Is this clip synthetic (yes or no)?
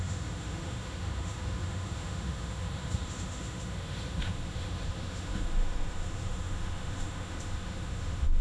yes